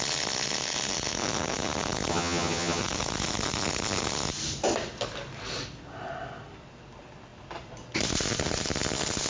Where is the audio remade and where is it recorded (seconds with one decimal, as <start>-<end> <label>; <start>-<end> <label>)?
0.0-2.1 recorded; 2.1-2.8 remade; 2.8-9.3 recorded